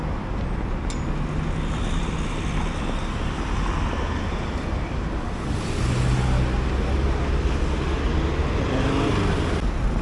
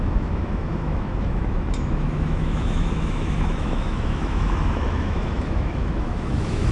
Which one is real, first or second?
first